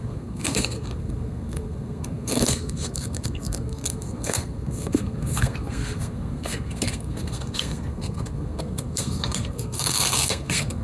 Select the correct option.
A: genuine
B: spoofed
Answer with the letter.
B